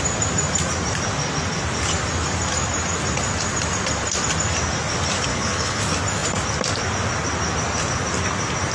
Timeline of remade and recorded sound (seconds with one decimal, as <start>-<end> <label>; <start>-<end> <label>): 0.0-5.3 recorded; 5.3-5.8 remade; 5.8-8.7 recorded